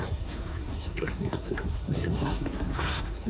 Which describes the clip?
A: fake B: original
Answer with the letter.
A